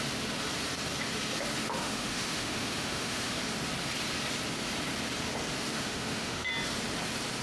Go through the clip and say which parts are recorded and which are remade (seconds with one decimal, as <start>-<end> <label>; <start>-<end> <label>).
0.0-1.8 recorded; 1.8-3.4 remade; 3.4-5.7 recorded; 5.7-6.5 remade; 6.5-7.4 recorded